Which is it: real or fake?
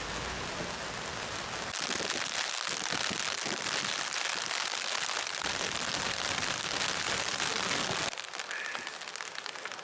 real